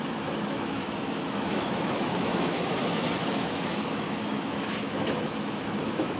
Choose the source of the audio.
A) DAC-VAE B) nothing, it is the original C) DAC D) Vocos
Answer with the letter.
A